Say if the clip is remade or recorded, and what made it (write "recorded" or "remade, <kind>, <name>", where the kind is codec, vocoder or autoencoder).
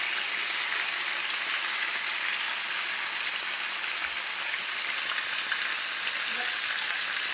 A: recorded